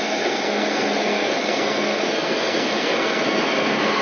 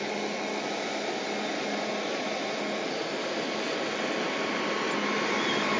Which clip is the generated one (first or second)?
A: first